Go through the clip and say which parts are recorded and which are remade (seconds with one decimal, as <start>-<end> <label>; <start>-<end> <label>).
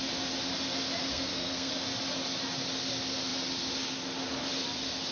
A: 0.0-1.1 recorded; 1.1-1.7 remade; 1.7-5.1 recorded